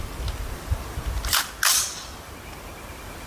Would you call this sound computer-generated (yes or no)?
no